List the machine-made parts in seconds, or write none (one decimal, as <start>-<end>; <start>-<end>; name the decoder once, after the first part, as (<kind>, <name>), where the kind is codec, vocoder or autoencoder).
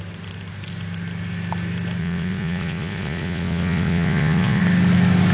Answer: 2.0-4.6 (vocoder, Vocos)